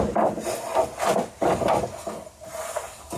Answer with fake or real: real